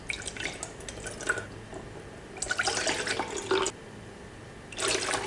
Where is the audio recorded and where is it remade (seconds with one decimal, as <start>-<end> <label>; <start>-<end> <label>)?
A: 0.0-5.3 recorded